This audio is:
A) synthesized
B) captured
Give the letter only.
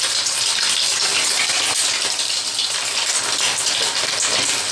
B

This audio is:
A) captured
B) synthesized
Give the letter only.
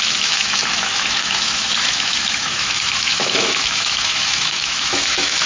B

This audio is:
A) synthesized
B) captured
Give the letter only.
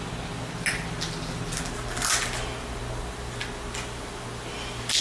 B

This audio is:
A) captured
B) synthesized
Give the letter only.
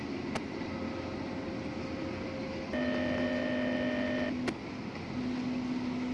A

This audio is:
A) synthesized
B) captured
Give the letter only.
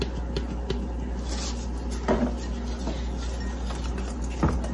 B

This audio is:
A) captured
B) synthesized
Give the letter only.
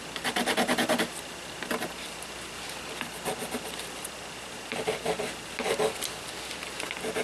A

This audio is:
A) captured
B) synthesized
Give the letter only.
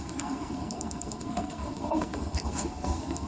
B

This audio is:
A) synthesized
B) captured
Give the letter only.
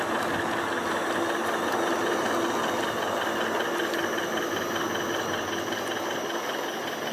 B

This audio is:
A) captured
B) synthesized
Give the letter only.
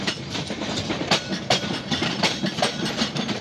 B